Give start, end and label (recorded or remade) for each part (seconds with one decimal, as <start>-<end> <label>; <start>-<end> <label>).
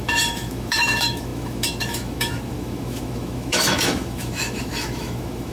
0.0-5.5 remade